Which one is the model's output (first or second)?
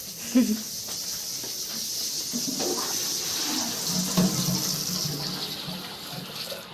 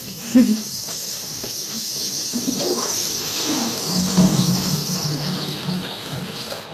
second